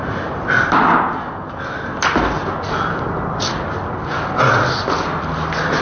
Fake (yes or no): no